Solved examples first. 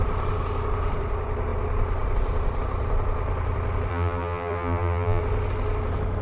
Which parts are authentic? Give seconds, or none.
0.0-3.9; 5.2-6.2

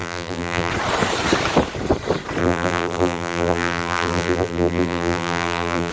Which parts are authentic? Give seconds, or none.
0.7-2.4

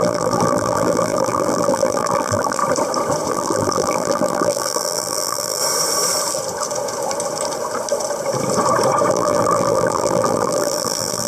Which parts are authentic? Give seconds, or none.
2.6-3.3; 5.6-9.1

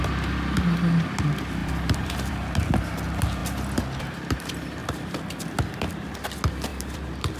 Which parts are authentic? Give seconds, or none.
0.0-1.6; 2.3-4.8; 5.4-6.7